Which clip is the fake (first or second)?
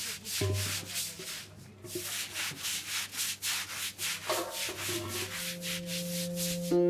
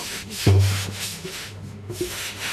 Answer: second